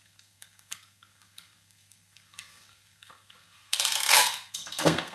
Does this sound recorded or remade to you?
remade